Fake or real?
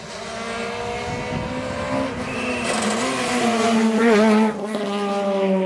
real